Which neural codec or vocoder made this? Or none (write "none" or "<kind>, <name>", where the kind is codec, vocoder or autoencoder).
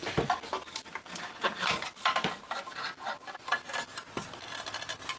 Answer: none